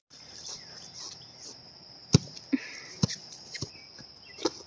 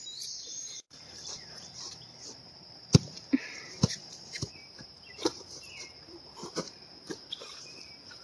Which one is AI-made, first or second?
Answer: second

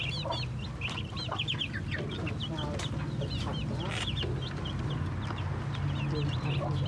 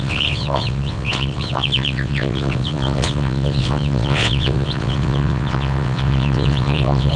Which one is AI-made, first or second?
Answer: second